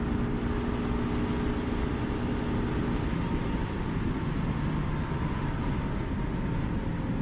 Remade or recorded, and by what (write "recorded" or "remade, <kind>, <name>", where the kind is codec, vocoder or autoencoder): recorded